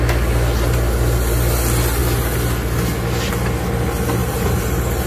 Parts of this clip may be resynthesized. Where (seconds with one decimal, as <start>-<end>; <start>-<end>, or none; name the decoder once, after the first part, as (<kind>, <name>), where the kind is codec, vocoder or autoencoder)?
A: 4.2-5.1 (vocoder, BigVGAN v2)